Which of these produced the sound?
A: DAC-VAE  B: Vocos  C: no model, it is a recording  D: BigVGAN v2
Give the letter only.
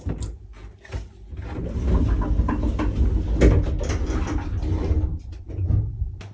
C